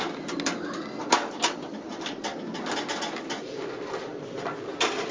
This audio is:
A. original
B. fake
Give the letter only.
A